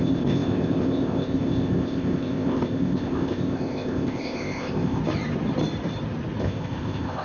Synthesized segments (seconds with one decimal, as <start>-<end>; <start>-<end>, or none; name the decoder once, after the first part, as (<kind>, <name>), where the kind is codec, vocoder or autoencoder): 0.0-5.0 (codec, ZipCodec); 6.4-7.2